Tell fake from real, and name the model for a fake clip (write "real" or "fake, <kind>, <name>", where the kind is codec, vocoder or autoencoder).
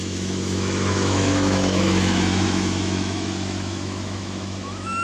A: fake, autoencoder, DAC-VAE